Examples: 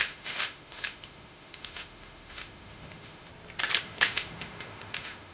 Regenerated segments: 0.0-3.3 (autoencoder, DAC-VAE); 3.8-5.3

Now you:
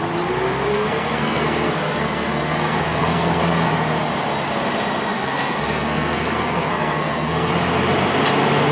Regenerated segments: 0.7-3.7 (codec, SNAC); 5.1-7.5

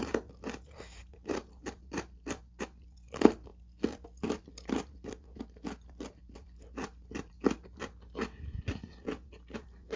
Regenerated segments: 1.0-2.3 (vocoder, BigVGAN v2)

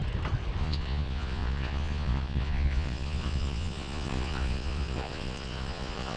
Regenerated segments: 0.6-6.2 (vocoder, Vocos)

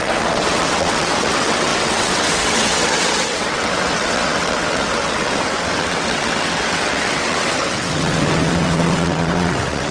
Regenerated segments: 0.0-9.9 (vocoder, WaveNeXt)

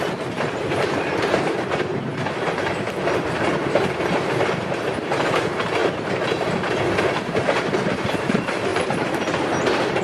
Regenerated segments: 0.0-5.8 (vocoder, BigVGAN v2); 7.0-10.0